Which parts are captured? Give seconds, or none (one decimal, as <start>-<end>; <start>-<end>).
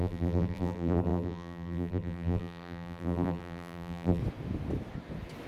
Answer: 4.2-5.5